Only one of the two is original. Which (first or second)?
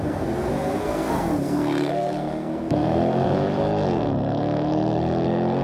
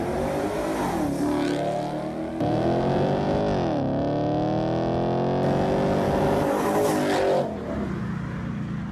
second